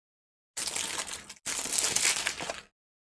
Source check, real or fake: real